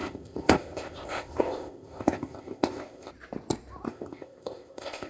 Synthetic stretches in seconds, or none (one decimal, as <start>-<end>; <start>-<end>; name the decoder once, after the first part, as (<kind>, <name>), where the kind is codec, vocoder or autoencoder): 0.0-3.1 (codec, ZipCodec); 3.9-5.1